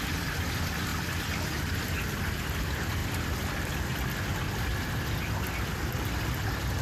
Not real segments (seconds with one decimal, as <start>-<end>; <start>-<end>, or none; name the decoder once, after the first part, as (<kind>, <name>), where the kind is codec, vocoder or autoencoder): none